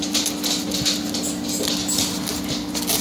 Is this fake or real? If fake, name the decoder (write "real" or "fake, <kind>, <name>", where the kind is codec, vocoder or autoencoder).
real